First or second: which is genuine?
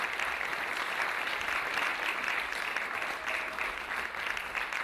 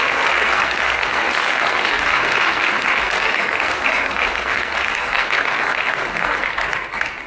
first